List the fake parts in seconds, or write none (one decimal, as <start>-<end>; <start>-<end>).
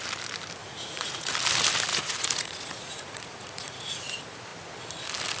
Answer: 0.6-1.3; 1.9-4.0